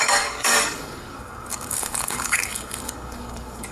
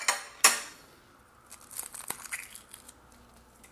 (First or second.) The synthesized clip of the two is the first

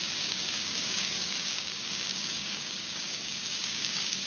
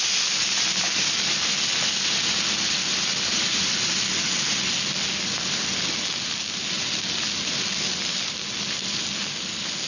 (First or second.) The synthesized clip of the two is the first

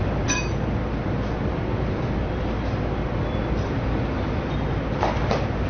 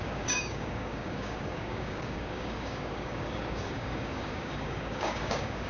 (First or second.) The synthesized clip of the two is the second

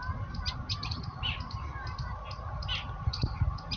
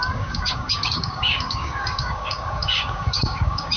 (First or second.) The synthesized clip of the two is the second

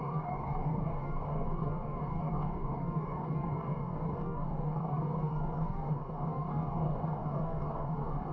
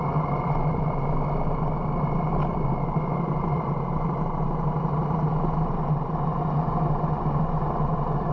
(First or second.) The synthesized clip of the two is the first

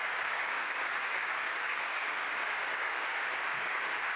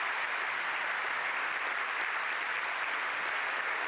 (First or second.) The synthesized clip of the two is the first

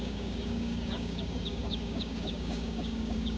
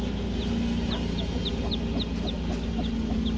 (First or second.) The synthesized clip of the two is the first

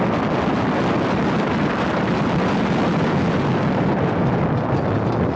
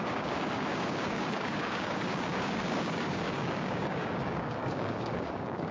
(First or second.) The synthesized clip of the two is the second